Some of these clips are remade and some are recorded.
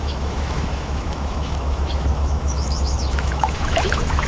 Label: remade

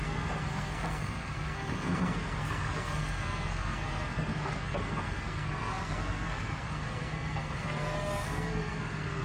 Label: remade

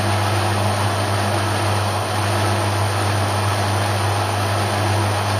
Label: recorded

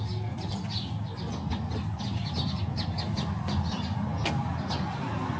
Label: recorded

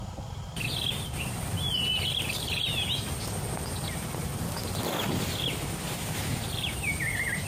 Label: recorded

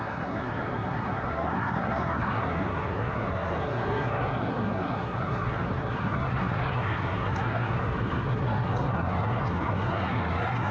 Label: remade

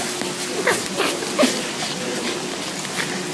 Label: recorded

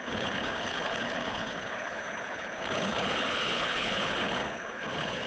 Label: remade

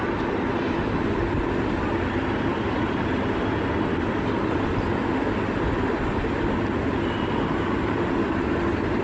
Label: recorded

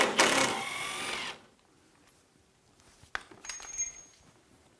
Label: recorded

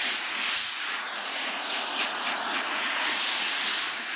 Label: remade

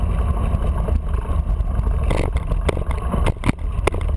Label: recorded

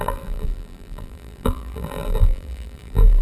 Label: remade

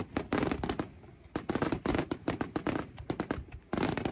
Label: recorded